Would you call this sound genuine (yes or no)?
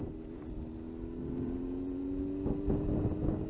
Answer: yes